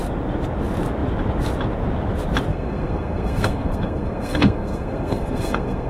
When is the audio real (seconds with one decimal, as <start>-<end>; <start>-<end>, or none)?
0.0-2.5